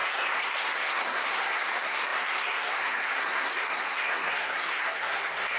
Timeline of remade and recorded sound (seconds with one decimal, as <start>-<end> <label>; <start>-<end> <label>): 0.0-5.6 remade